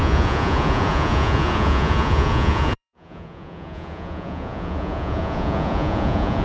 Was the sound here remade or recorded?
remade